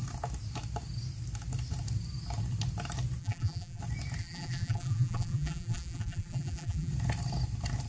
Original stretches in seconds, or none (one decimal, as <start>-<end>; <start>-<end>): 0.0-3.2; 3.8-4.2; 6.9-7.9